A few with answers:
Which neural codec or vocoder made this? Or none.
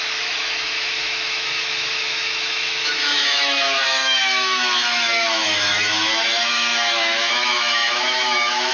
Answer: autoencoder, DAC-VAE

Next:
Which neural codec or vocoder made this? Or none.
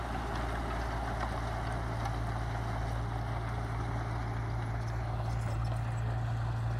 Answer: none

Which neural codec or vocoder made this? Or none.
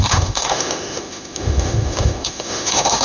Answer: autoencoder, DAC-VAE